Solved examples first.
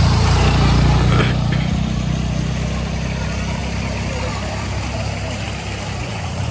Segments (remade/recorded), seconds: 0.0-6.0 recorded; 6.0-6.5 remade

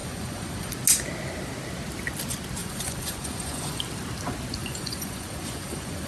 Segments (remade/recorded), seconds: 0.0-0.7 remade; 0.7-2.6 recorded; 2.6-3.8 remade; 3.8-4.6 recorded; 4.6-6.1 remade

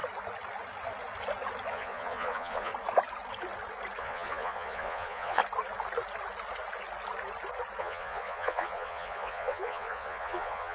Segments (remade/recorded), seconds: 0.0-1.7 recorded; 1.7-2.7 remade; 2.7-4.0 recorded; 4.0-5.4 remade; 5.4-7.8 recorded; 7.8-10.7 remade

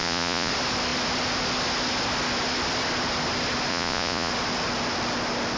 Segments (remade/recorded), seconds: 0.0-0.5 remade; 0.5-3.7 recorded; 3.7-4.3 remade; 4.3-5.6 recorded

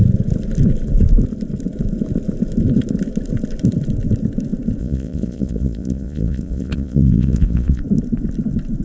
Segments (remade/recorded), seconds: 0.0-4.8 recorded; 4.8-7.8 remade; 7.8-8.8 recorded

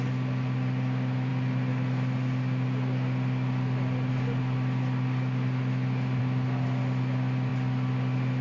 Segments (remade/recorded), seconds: 0.0-8.4 recorded

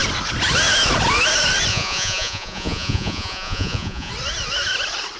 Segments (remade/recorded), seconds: 0.0-1.7 recorded; 1.7-4.1 remade; 4.1-5.2 recorded